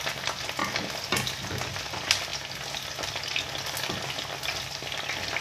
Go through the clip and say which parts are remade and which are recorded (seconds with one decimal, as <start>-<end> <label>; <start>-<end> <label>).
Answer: 0.0-5.4 recorded